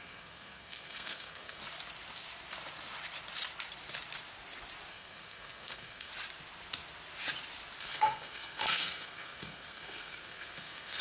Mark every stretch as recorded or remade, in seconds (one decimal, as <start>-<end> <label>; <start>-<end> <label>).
0.0-1.6 remade; 1.6-4.9 recorded; 4.9-6.1 remade; 6.1-7.8 recorded; 7.8-11.0 remade